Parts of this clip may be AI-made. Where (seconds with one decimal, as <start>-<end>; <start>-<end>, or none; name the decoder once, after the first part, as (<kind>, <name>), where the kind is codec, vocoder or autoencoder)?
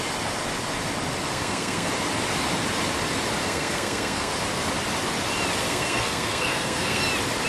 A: 1.3-1.9 (codec, SNAC); 3.4-4.3; 5.6-7.0